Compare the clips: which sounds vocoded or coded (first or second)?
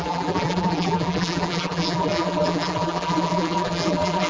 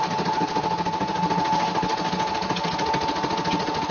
first